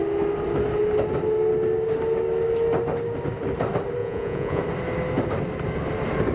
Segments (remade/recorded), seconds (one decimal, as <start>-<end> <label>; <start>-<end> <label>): 0.0-4.0 recorded; 4.0-4.6 remade; 4.6-6.3 recorded